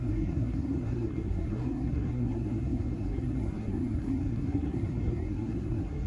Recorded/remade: remade